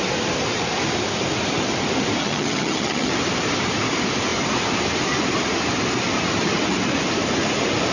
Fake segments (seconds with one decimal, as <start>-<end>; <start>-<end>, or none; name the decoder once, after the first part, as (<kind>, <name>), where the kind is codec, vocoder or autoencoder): 2.2-3.1 (vocoder, HiFi-GAN)